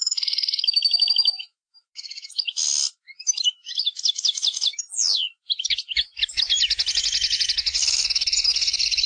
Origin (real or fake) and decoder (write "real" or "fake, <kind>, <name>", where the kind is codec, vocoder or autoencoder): fake, autoencoder, DAC-VAE